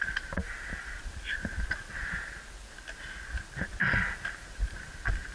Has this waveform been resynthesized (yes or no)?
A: no